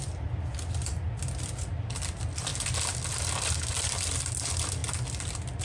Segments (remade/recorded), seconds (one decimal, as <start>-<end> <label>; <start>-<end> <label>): 0.0-5.6 recorded